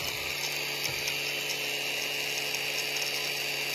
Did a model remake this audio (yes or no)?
no